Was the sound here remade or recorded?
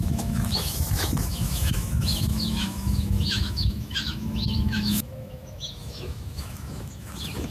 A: remade